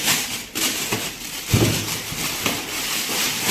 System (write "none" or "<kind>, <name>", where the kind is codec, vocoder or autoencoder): none